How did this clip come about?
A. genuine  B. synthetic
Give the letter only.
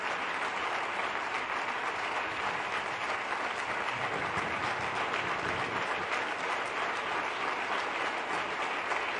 A